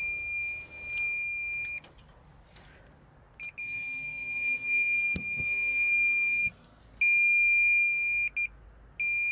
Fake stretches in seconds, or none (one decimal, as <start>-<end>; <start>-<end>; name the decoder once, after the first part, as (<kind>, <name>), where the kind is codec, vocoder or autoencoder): 3.6-6.8 (codec, SNAC)